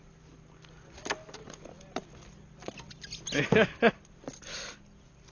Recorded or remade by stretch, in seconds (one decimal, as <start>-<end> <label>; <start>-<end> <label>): 0.0-5.3 recorded